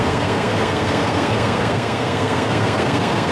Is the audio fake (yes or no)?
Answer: yes